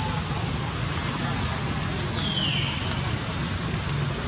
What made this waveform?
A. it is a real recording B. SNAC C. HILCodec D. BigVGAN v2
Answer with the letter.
A